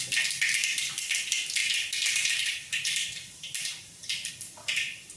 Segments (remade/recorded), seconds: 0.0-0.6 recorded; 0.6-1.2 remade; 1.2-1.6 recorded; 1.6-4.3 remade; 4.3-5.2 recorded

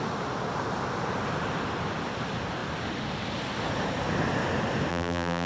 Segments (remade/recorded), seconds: 0.0-4.9 recorded; 4.9-5.5 remade

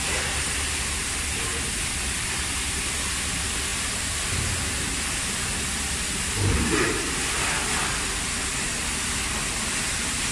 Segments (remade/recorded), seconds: 0.0-10.3 recorded

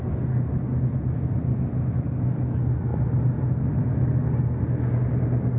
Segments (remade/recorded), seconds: 0.0-5.6 recorded

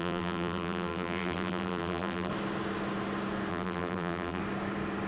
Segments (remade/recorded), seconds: 0.0-2.3 remade; 2.3-3.5 recorded; 3.5-4.4 remade; 4.4-5.1 recorded

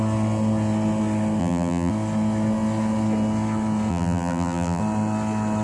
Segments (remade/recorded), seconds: 0.0-1.4 recorded; 1.4-1.9 remade; 1.9-3.9 recorded; 3.9-4.8 remade; 4.8-5.6 recorded

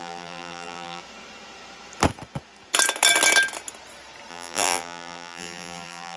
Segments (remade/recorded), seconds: 0.0-1.0 remade; 1.0-4.3 recorded; 4.3-6.2 remade